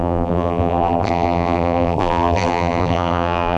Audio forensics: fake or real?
fake